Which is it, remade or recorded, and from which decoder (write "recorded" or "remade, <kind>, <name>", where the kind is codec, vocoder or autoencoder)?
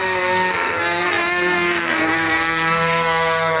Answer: remade, codec, SNAC